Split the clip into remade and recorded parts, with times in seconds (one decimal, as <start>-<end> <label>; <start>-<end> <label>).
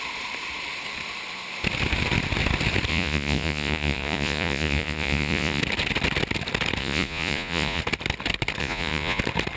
0.0-2.9 recorded; 2.9-5.6 remade; 5.6-6.8 recorded; 6.8-7.8 remade; 7.8-8.6 recorded; 8.6-9.2 remade; 9.2-9.6 recorded